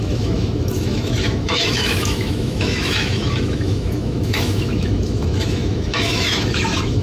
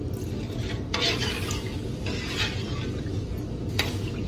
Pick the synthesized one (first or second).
first